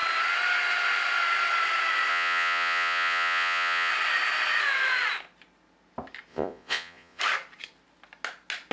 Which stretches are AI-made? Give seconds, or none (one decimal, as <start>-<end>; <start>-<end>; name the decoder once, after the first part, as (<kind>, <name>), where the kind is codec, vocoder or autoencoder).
2.1-3.9 (vocoder, Vocos); 6.3-7.2